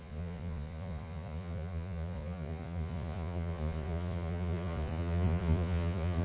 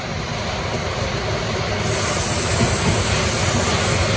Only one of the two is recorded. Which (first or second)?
second